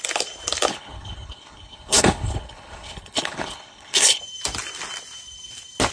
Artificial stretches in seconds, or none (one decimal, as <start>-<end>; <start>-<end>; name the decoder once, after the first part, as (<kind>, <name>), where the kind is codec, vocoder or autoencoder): 0.7-4.2 (codec, HILCodec)